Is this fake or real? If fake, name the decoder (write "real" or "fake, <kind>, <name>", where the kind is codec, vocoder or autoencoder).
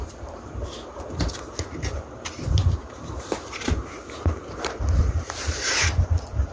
fake, vocoder, BigVGAN v2